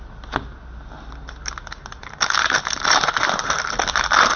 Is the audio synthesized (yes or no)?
no